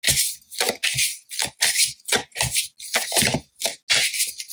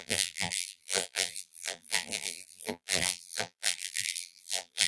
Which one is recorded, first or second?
first